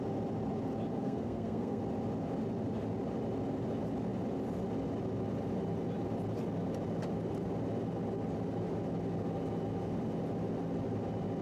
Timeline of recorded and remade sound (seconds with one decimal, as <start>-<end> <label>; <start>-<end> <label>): 0.0-0.9 recorded; 0.9-1.8 remade; 1.8-11.4 recorded